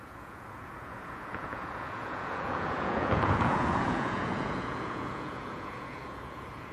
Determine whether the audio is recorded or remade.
remade